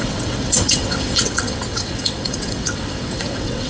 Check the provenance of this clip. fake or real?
fake